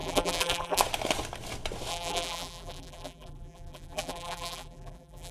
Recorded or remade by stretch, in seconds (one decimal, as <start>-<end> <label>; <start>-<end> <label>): 0.0-0.8 remade; 0.8-1.9 recorded; 1.9-5.3 remade